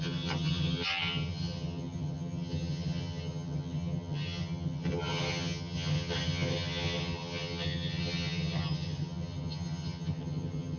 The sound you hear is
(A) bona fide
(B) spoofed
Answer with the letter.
B